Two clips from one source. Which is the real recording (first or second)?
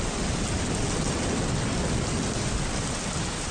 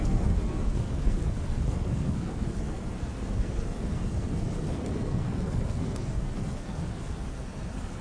first